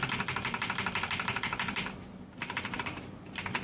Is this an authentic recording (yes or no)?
yes